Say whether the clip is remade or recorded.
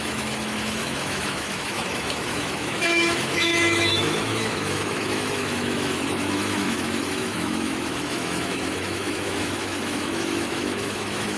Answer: remade